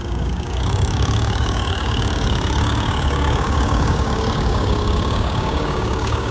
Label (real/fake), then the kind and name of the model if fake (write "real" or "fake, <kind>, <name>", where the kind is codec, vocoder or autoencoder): fake, codec, DAC